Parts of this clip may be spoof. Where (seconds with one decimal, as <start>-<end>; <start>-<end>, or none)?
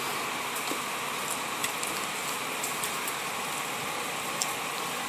1.6-5.1